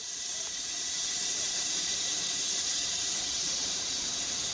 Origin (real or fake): fake